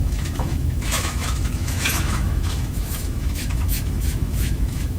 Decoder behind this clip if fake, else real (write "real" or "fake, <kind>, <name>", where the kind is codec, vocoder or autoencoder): fake, autoencoder, DAC-VAE